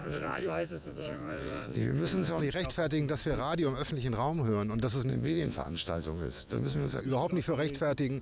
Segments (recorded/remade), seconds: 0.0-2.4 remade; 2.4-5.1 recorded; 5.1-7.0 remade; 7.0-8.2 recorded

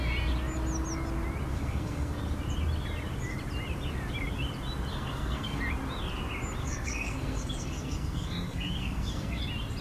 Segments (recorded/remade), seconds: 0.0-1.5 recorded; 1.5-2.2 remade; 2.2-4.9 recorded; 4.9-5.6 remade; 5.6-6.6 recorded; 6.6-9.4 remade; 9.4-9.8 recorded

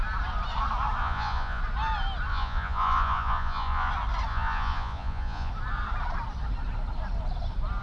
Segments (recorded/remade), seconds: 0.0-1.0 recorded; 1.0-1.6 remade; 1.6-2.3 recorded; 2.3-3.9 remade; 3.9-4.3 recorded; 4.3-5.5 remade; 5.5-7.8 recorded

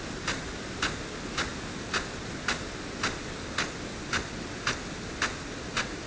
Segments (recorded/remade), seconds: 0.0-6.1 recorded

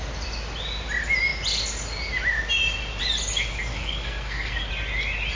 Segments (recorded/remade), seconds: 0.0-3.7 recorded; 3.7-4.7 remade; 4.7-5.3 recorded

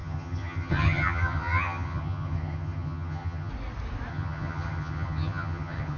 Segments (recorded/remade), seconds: 0.0-3.5 remade; 3.5-4.1 recorded; 4.1-6.0 remade

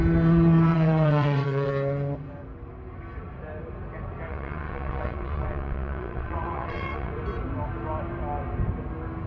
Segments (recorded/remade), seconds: 0.0-0.7 recorded; 0.7-1.7 remade; 1.7-4.3 recorded; 4.3-7.1 remade; 7.1-9.3 recorded